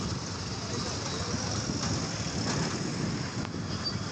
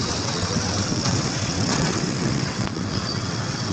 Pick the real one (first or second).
first